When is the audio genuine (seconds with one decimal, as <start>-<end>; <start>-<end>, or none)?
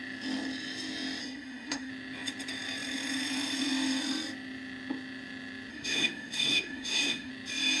0.0-1.2; 1.9-5.7; 7.3-7.8